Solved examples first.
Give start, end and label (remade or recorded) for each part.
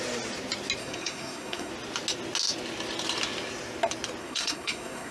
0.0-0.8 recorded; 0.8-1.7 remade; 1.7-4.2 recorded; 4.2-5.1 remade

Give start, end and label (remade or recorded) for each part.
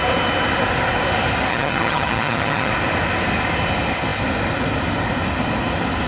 0.0-1.5 recorded; 1.5-2.7 remade; 2.7-6.1 recorded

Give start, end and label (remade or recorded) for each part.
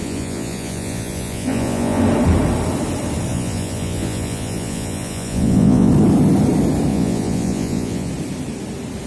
0.0-2.0 remade; 2.0-3.3 recorded; 3.3-5.9 remade; 5.9-6.9 recorded; 6.9-8.1 remade; 8.1-9.1 recorded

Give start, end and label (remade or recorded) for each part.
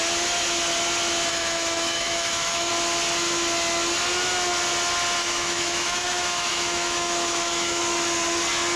0.0-1.3 recorded; 1.3-2.7 remade; 2.7-5.2 recorded; 5.2-7.8 remade; 7.8-8.8 recorded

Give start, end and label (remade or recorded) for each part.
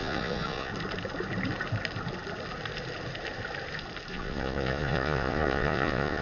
0.0-0.7 remade; 0.7-4.1 recorded; 4.1-6.2 remade